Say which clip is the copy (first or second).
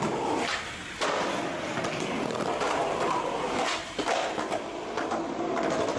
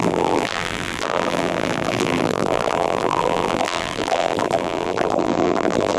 second